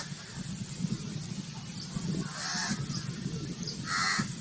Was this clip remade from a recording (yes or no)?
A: no